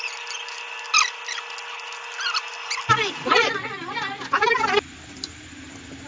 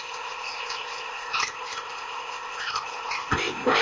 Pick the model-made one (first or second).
second